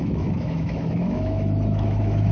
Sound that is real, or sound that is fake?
fake